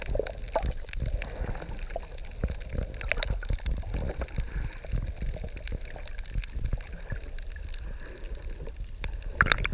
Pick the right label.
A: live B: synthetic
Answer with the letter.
A